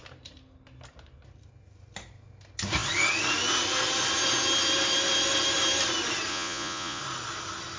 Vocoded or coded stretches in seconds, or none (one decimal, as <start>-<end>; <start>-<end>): 6.3-7.0